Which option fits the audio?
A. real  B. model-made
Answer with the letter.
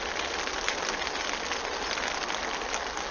A